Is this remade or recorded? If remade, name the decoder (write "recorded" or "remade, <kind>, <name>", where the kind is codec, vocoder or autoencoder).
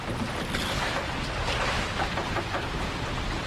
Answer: recorded